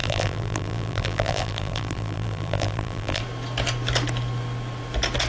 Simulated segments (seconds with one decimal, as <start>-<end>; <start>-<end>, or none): 0.0-3.2